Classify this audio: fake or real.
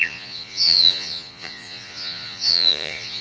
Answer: fake